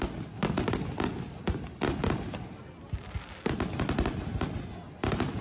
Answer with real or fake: real